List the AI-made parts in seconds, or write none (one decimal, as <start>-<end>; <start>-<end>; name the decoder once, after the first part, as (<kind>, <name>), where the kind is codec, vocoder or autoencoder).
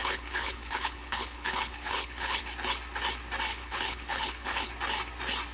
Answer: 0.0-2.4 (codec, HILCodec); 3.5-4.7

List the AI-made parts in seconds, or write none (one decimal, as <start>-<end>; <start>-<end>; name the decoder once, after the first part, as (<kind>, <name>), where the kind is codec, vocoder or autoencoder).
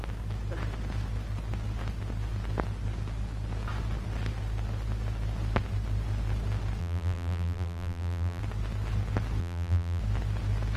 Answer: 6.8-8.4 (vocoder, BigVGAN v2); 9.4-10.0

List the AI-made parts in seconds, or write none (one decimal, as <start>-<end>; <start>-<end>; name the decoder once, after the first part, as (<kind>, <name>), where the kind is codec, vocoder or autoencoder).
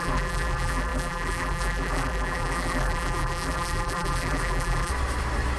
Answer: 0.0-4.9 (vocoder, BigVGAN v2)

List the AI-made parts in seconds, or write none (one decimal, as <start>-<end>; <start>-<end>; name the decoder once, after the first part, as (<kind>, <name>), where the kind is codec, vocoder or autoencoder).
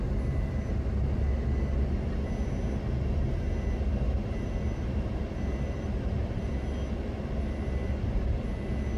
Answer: 3.9-6.6 (vocoder, BigVGAN v2)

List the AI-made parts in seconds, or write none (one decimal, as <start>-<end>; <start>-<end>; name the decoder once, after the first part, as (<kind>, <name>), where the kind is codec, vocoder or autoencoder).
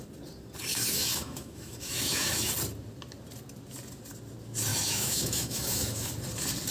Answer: 0.7-2.5 (autoencoder, DAC-VAE); 4.7-6.1